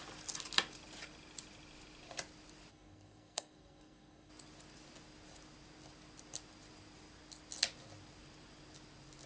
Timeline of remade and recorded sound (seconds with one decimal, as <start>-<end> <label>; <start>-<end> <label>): 0.0-2.7 recorded; 2.7-4.3 remade; 4.3-9.3 recorded